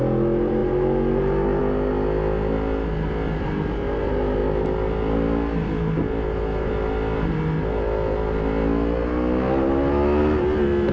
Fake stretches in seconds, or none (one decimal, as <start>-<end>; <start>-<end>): none